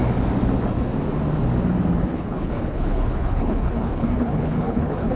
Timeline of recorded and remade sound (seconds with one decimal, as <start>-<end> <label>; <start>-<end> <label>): 0.0-2.1 recorded; 2.1-5.2 remade